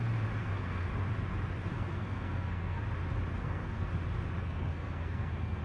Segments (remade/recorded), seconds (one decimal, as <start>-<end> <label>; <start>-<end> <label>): 0.0-0.4 recorded; 0.4-0.9 remade; 0.9-1.7 recorded; 1.7-2.8 remade; 2.8-3.4 recorded; 3.4-3.9 remade; 3.9-4.4 recorded; 4.4-5.6 remade